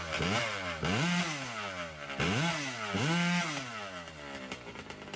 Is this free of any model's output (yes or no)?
yes